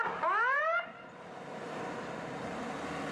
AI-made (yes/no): yes